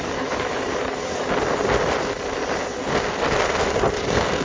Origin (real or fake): real